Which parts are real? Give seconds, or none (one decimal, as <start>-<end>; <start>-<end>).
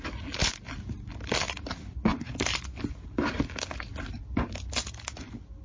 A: 0.0-5.6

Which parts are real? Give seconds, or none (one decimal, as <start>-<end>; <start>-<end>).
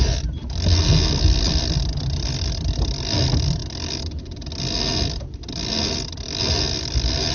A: 0.0-7.3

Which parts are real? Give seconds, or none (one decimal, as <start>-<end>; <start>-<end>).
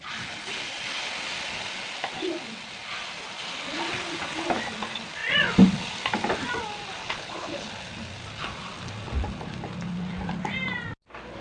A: 0.0-7.0; 7.7-11.4